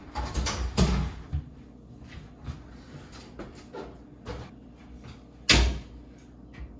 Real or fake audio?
real